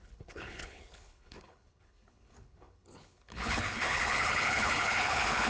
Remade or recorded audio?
remade